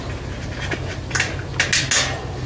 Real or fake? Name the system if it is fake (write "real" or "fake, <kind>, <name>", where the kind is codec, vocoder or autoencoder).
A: real